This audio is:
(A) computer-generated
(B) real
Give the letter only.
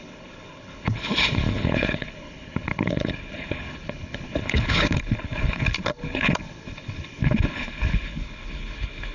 A